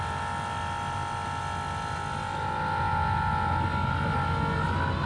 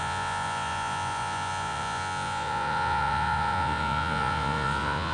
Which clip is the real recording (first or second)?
first